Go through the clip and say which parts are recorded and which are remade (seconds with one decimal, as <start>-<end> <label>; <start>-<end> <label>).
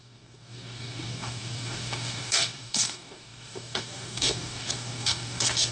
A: 0.0-5.7 remade